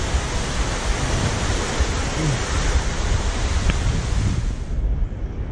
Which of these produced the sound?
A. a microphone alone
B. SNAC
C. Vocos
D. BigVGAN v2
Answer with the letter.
A